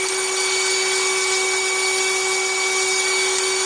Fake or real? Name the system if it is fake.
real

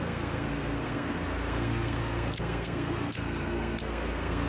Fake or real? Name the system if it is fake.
fake, codec, SNAC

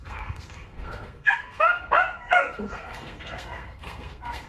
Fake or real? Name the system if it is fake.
fake, codec, SNAC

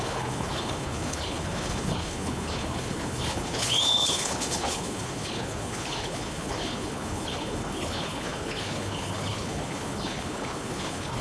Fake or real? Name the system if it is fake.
fake, codec, HILCodec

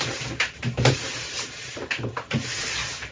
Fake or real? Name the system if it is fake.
fake, vocoder, BigVGAN v2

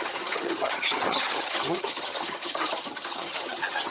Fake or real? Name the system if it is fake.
fake, vocoder, HiFi-GAN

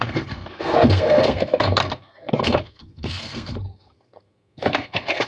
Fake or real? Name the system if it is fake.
fake, codec, SNAC